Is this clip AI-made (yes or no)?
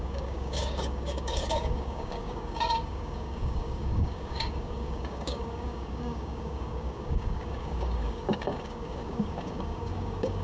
yes